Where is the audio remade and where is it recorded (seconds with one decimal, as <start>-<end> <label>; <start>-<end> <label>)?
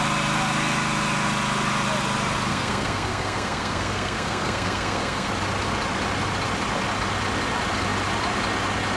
0.0-2.5 recorded; 2.5-5.3 remade; 5.3-9.0 recorded